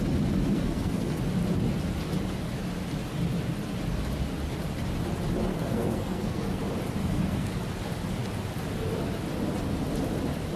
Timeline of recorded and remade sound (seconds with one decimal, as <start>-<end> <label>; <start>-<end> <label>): 0.0-0.4 recorded; 0.4-1.2 remade; 1.2-5.5 recorded; 5.5-6.6 remade; 6.6-7.0 recorded; 7.0-7.5 remade; 7.5-10.6 recorded